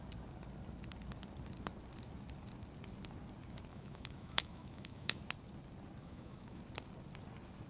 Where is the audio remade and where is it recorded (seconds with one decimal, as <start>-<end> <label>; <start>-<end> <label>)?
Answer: 0.0-3.7 recorded; 3.7-5.2 remade; 5.2-6.0 recorded; 6.0-6.6 remade; 6.6-7.7 recorded